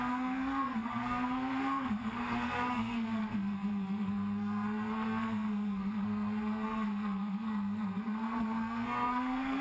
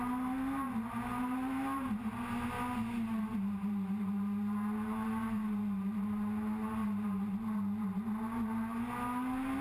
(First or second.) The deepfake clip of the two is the first